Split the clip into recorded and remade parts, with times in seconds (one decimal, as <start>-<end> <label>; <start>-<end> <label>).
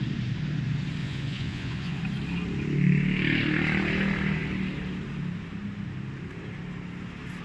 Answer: 0.0-1.0 recorded; 1.0-2.0 remade; 2.0-7.4 recorded